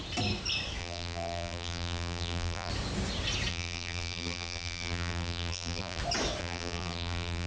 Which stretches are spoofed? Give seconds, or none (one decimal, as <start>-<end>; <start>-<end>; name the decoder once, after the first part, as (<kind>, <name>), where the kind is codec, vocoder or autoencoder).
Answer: 0.8-2.7 (vocoder, BigVGAN v2); 3.5-6.0; 6.4-7.5